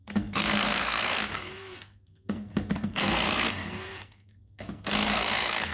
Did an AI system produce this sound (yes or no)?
yes